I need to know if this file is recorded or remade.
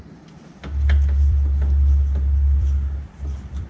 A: remade